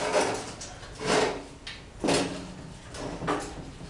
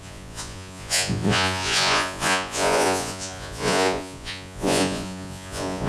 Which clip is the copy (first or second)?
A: second